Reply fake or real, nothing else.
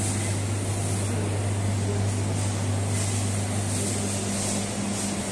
real